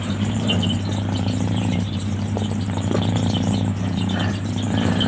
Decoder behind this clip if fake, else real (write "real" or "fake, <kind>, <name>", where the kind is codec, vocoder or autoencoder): fake, vocoder, BigVGAN v2